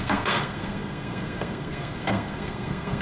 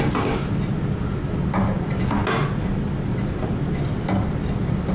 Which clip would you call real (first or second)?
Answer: second